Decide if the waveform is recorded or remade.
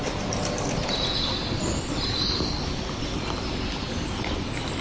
recorded